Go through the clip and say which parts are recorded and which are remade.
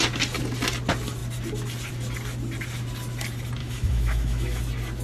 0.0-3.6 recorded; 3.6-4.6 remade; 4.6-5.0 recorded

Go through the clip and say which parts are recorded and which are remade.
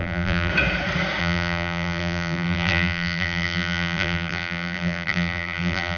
0.0-0.5 remade; 0.5-1.2 recorded; 1.2-6.0 remade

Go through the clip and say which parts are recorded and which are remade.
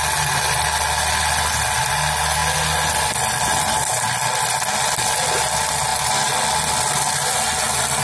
0.0-8.0 recorded